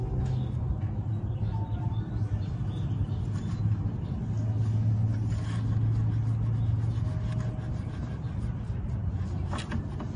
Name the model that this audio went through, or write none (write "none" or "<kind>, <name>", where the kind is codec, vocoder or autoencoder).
none